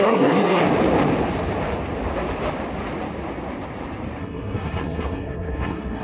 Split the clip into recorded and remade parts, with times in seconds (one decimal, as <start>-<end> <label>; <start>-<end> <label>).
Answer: 0.0-0.6 remade; 0.6-4.2 recorded; 4.2-6.0 remade